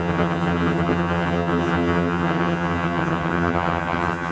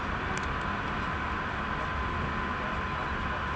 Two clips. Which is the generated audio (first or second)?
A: first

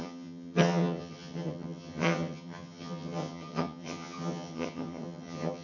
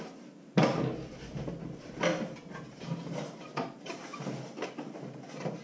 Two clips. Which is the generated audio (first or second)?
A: first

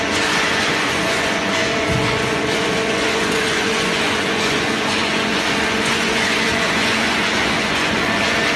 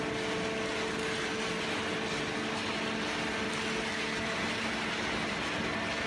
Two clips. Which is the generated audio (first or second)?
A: first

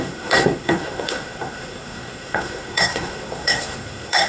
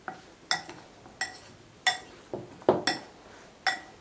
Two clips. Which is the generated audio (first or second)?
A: first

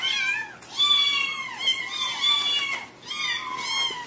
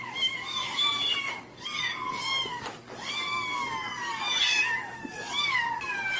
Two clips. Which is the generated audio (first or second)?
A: second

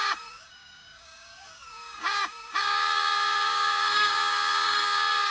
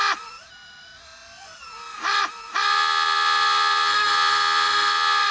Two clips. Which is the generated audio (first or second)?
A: first